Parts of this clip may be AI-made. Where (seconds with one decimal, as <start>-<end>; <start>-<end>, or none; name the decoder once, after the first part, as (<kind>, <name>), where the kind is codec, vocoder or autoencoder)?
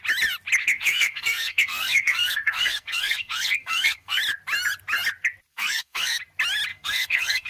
0.6-4.2 (codec, SNAC); 5.5-6.2; 6.7-7.5